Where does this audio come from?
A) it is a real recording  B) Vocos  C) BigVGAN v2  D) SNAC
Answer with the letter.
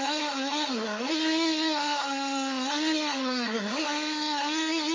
D